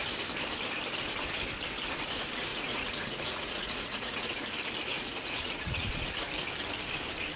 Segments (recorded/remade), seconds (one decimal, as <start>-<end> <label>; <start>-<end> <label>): 0.0-2.5 recorded; 2.5-4.3 remade; 4.3-4.9 recorded; 4.9-5.9 remade; 5.9-7.4 recorded